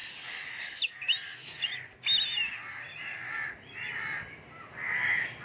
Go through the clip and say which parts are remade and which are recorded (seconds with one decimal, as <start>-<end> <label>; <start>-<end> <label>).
0.0-5.4 recorded